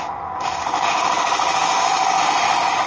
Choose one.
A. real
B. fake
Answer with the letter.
B